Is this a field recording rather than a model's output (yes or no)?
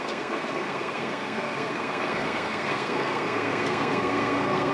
no